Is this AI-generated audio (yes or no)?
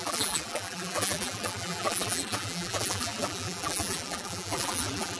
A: yes